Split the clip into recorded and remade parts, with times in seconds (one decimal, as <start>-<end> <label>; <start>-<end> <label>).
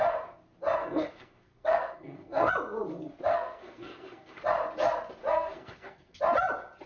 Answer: 0.0-0.8 recorded; 0.8-2.5 remade; 2.5-3.3 recorded; 3.3-4.4 remade; 4.4-5.3 recorded; 5.3-6.2 remade; 6.2-6.9 recorded